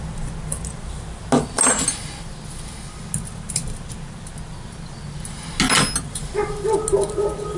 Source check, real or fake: real